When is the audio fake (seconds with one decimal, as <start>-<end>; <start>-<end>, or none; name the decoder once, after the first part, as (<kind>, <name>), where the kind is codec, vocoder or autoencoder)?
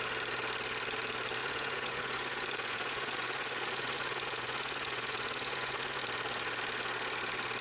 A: 1.4-6.0 (vocoder, Vocos)